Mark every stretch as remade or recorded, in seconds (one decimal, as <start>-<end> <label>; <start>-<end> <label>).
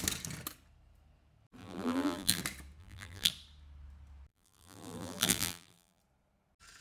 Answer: 0.0-1.6 recorded; 1.6-2.4 remade; 2.4-2.8 recorded; 2.8-3.3 remade; 3.3-4.3 recorded; 4.3-6.0 remade; 6.0-6.8 recorded